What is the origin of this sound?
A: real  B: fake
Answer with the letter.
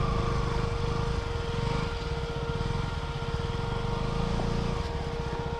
A